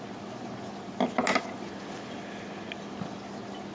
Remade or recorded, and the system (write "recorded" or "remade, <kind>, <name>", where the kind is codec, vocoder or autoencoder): recorded